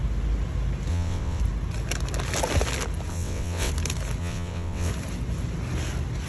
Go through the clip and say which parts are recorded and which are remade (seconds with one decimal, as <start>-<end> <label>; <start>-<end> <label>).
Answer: 0.0-0.9 recorded; 0.9-1.4 remade; 1.4-3.1 recorded; 3.1-3.7 remade; 3.7-4.2 recorded; 4.2-4.9 remade; 4.9-6.3 recorded